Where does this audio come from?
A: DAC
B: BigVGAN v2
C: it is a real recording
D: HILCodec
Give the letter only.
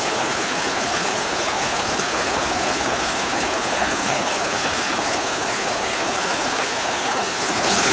D